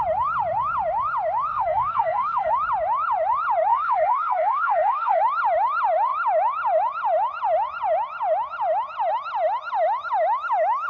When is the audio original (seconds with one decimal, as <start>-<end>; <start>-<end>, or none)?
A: 0.0-1.5; 2.5-3.7; 5.2-10.9